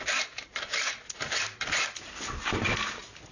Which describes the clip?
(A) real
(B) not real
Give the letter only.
A